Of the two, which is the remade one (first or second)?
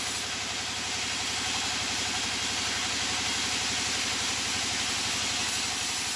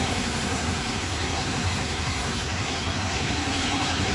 second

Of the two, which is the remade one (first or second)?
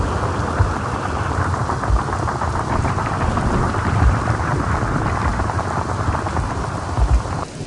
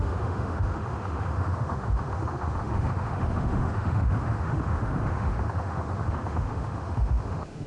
second